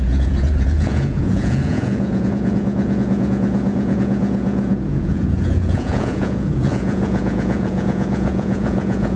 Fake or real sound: fake